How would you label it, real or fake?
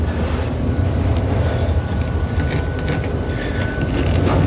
real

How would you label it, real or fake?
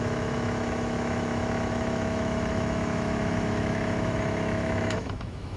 fake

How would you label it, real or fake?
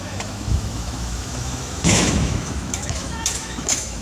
fake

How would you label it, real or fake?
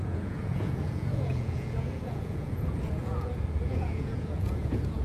fake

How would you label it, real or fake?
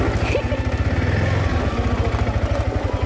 real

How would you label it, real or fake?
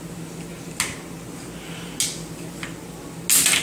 real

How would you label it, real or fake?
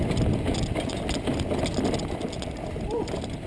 real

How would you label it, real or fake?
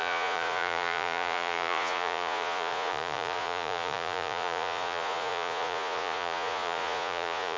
fake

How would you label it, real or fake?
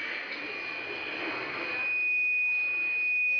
real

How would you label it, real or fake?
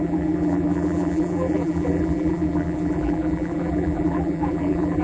fake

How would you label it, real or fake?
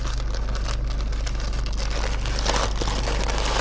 real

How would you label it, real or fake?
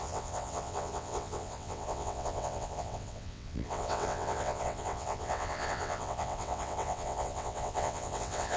fake